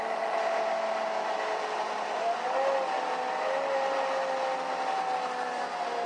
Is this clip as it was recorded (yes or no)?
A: yes